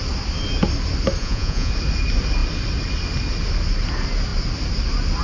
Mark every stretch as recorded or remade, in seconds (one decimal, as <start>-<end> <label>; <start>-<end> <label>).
0.0-1.2 recorded; 1.2-1.7 remade; 1.7-5.2 recorded